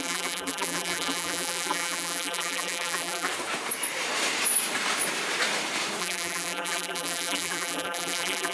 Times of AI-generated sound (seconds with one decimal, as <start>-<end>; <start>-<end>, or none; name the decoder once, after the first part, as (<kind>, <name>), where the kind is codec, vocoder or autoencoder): 0.0-3.3 (vocoder, BigVGAN v2); 6.0-8.5